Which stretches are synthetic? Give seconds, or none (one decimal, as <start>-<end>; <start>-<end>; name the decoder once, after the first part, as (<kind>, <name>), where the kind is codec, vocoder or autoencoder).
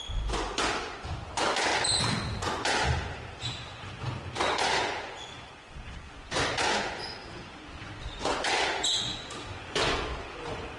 0.0-1.7 (vocoder, Vocos); 2.4-10.8